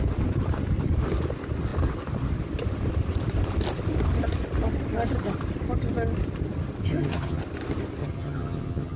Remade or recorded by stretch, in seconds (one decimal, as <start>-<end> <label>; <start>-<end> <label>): 0.0-6.9 recorded; 6.9-7.4 remade; 7.4-8.0 recorded; 8.0-9.0 remade